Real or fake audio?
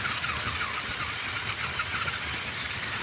real